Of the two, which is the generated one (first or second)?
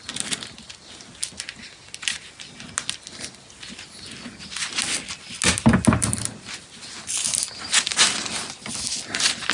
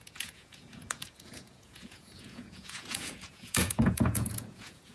second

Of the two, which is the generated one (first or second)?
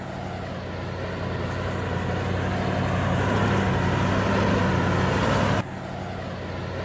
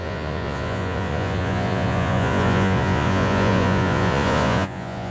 second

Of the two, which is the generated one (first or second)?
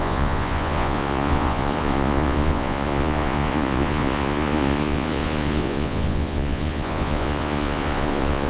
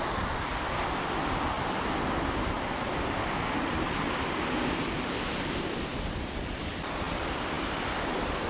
first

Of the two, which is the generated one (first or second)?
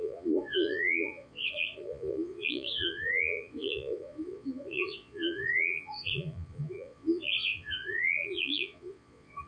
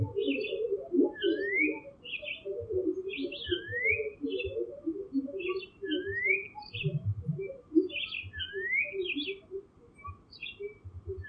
first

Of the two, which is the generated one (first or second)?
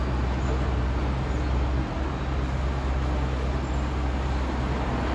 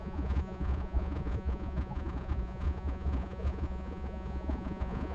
second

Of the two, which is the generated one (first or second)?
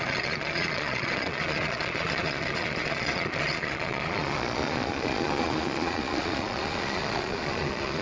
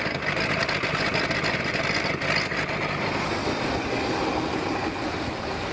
first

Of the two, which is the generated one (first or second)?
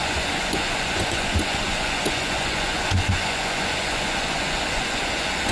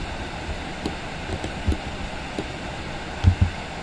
first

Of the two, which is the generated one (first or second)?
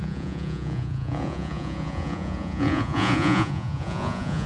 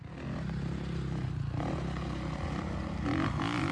first